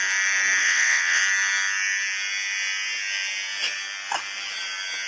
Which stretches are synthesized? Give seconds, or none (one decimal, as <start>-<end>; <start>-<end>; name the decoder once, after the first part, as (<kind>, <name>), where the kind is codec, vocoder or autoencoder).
0.6-1.2 (vocoder, WaveNeXt)